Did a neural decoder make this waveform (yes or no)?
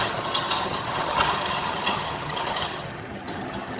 yes